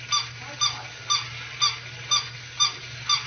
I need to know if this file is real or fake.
real